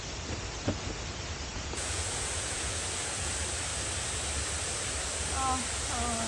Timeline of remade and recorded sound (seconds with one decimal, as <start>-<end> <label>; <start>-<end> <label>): 0.0-1.5 recorded; 1.5-3.3 remade; 3.3-6.3 recorded

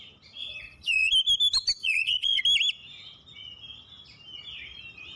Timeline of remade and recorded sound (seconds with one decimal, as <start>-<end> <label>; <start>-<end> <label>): 0.0-0.4 recorded; 0.4-1.1 remade; 1.1-1.8 recorded; 1.8-2.4 remade; 2.4-5.2 recorded

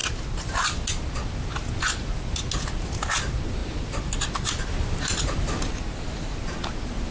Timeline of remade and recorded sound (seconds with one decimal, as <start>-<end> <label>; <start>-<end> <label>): 0.0-7.1 recorded

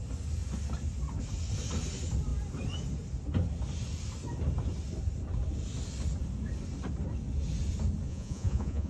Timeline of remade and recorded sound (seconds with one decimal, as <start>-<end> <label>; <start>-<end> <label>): 0.0-8.1 recorded; 8.1-8.9 remade

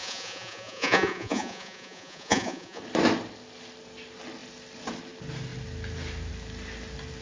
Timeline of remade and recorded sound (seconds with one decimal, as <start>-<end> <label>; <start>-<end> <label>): 0.0-2.8 remade; 2.8-7.2 recorded

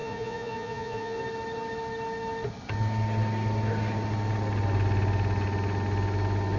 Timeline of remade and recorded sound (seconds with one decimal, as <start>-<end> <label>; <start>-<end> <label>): 0.0-1.2 remade; 1.2-6.6 recorded